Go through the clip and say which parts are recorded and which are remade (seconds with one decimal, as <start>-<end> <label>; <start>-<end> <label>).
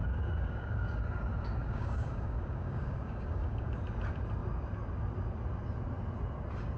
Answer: 0.0-1.0 remade; 1.0-1.6 recorded; 1.6-3.8 remade; 3.8-6.8 recorded